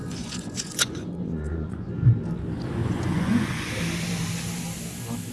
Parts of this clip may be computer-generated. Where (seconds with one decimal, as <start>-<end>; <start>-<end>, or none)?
0.0-1.9; 2.8-3.7